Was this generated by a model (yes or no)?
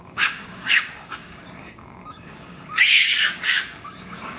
yes